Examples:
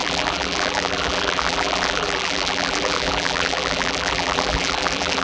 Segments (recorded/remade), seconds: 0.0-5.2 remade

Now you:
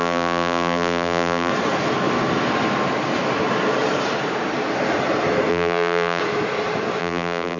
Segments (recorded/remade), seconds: 0.0-1.5 remade; 1.5-5.5 recorded; 5.5-6.2 remade; 6.2-7.0 recorded; 7.0-7.6 remade

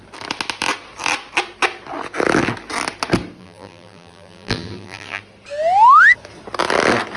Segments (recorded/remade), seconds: 0.0-3.4 recorded; 3.4-5.2 remade; 5.2-7.2 recorded

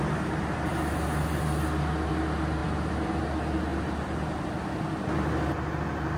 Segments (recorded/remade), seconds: 0.0-2.6 recorded; 2.6-3.2 remade; 3.2-3.7 recorded; 3.7-4.5 remade; 4.5-6.2 recorded

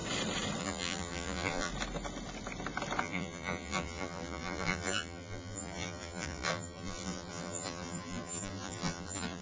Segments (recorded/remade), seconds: 0.0-0.6 recorded; 0.6-1.7 remade; 1.7-3.0 recorded; 3.0-9.4 remade

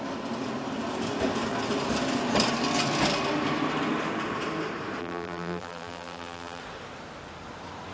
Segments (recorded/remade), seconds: 0.0-5.0 recorded; 5.0-6.6 remade; 6.6-7.9 recorded

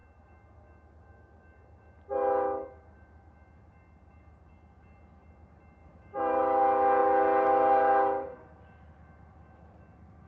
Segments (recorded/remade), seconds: 0.0-5.8 recorded; 5.8-6.4 remade; 6.4-10.3 recorded